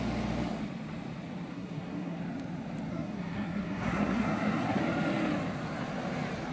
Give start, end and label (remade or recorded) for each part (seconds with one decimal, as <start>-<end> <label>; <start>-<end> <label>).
0.0-1.5 recorded; 1.5-2.2 remade; 2.2-2.9 recorded; 2.9-4.8 remade; 4.8-6.5 recorded